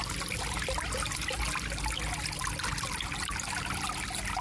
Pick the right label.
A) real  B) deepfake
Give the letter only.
A